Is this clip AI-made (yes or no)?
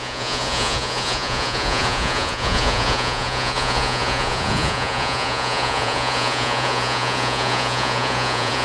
yes